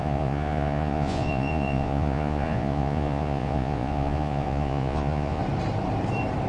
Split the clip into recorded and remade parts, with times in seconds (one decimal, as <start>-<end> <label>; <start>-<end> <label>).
0.0-5.4 remade; 5.4-6.5 recorded